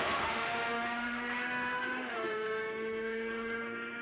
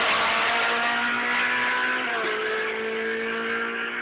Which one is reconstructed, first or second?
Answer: first